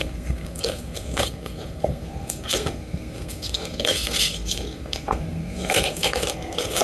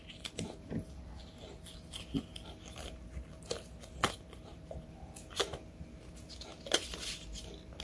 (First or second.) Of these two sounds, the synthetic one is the first